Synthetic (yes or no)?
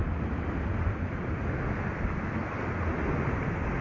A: no